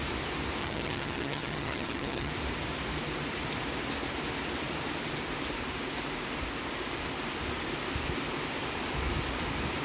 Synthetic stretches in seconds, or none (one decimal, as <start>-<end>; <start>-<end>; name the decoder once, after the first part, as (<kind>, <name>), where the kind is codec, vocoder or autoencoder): 0.6-2.3 (vocoder, HiFi-GAN)